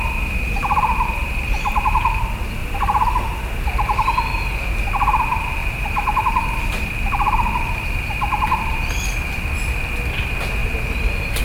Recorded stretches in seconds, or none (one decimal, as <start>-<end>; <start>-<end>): 0.0-0.6; 2.2-2.6; 3.1-5.6; 9.4-10.6